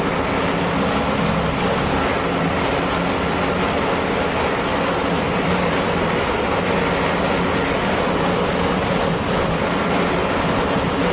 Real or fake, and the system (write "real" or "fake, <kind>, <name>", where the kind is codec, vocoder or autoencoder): real